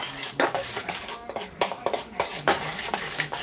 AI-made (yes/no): yes